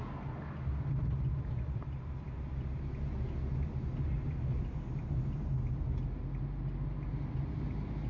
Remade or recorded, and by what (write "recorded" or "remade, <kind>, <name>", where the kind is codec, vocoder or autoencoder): recorded